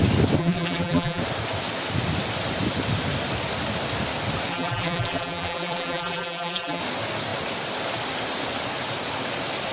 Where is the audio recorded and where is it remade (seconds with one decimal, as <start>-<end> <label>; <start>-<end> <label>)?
0.0-0.4 recorded; 0.4-1.2 remade; 1.2-4.5 recorded; 4.5-6.8 remade; 6.8-9.7 recorded